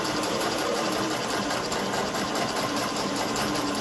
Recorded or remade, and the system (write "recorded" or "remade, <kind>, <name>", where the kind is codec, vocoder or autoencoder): remade, vocoder, BigVGAN v2